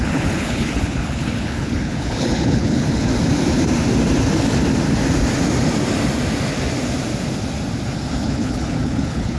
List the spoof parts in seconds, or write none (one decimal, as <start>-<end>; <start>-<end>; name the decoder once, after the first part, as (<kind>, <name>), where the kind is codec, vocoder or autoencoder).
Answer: 0.0-3.1 (codec, HILCodec); 8.2-9.4